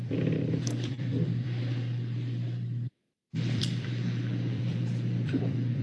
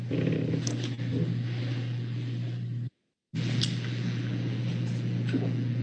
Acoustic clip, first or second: second